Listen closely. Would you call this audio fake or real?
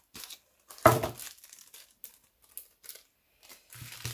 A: real